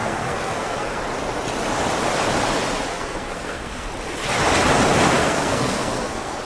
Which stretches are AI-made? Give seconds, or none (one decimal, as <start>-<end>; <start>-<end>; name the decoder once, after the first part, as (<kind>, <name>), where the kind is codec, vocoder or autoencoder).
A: 0.0-1.0 (codec, SNAC); 2.9-3.9; 5.2-6.4